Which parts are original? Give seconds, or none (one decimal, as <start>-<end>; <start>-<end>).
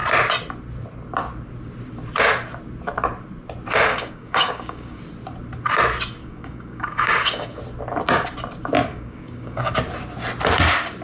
0.0-3.9; 5.0-6.2; 7.6-8.9; 9.7-11.0